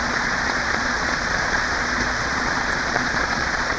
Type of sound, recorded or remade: remade